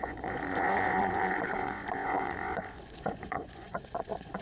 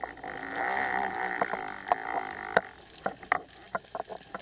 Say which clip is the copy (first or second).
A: first